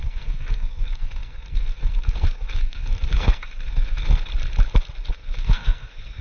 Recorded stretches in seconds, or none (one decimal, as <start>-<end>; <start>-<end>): 4.3-5.1